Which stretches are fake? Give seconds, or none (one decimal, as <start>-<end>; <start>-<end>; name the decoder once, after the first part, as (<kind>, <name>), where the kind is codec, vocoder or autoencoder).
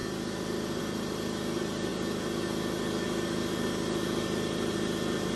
none